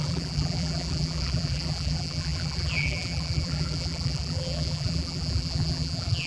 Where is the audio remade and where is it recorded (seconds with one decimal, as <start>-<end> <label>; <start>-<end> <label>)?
0.0-6.3 remade